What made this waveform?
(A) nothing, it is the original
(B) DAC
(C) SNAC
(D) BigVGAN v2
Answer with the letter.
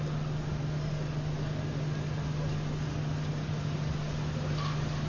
A